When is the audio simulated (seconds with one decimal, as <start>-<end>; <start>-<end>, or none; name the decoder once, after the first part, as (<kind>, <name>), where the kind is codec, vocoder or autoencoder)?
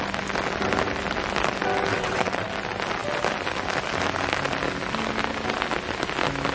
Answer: 1.9-2.5 (vocoder, WaveNeXt)